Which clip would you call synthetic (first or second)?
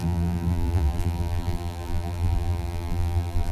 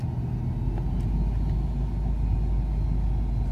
first